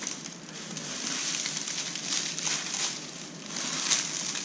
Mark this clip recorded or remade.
recorded